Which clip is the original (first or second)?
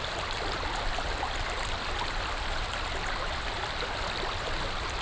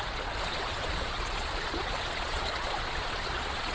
first